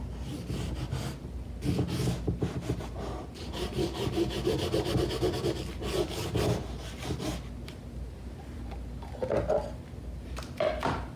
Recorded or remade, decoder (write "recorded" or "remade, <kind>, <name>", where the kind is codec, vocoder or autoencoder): recorded